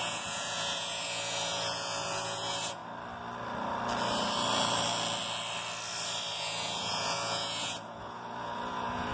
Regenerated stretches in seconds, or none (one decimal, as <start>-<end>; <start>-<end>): 0.0-2.8; 6.4-9.1